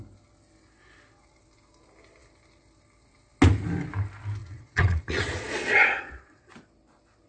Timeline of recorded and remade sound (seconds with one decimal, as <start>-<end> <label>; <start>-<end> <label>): 0.0-4.4 recorded; 4.4-6.5 remade; 6.5-7.3 recorded